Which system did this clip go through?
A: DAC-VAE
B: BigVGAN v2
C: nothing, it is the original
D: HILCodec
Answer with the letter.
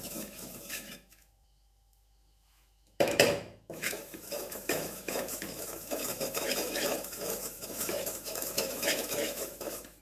A